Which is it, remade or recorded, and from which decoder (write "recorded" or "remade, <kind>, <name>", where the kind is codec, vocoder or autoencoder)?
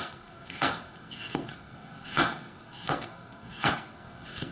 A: remade, codec, SNAC